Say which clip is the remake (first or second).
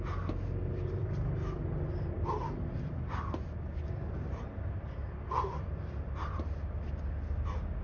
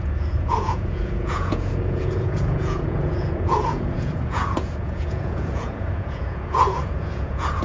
second